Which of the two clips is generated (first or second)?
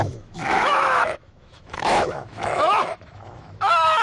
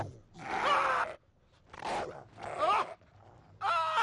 first